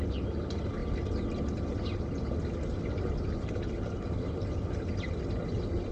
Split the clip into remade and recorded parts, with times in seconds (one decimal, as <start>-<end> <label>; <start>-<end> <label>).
0.0-5.9 recorded